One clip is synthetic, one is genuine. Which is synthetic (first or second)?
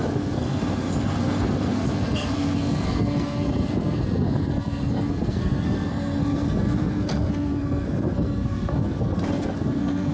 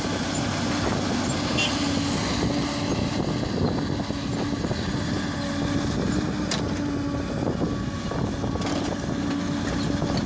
first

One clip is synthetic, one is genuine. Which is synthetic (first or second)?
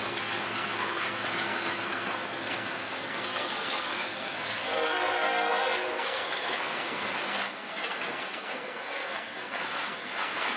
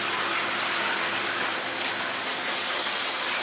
first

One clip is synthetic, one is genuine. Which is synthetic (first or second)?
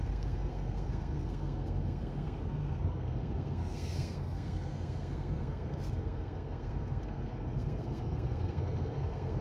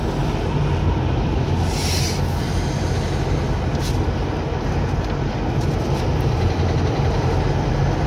first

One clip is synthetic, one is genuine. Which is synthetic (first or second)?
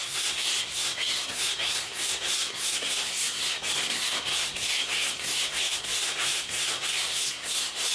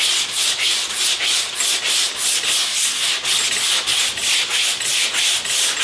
first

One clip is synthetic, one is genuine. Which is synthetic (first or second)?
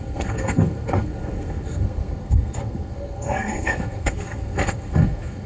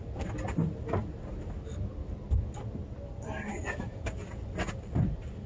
first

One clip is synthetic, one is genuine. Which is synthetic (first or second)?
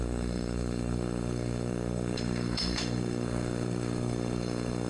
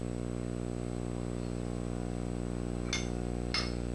first